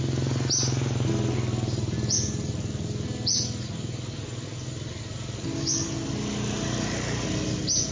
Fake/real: real